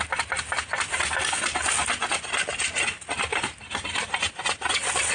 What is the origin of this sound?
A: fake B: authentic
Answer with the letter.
B